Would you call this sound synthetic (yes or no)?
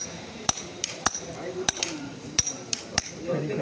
yes